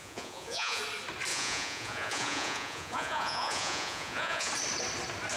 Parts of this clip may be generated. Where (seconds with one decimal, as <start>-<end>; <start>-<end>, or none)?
0.0-0.8; 1.3-4.5